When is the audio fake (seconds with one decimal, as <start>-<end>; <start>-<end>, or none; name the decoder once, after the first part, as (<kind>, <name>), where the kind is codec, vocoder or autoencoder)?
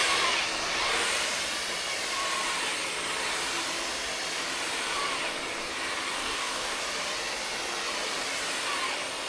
6.2-6.8 (codec, DAC)